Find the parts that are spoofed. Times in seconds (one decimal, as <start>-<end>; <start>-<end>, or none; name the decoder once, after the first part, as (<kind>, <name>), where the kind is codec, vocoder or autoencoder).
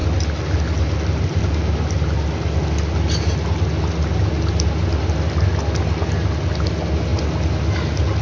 none